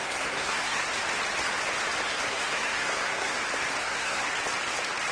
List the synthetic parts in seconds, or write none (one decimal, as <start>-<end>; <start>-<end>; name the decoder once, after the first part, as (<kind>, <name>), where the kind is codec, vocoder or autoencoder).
0.0-0.8 (codec, SNAC); 2.3-3.4; 3.8-4.3